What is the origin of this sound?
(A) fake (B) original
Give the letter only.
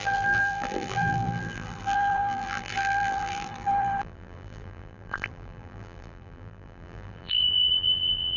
A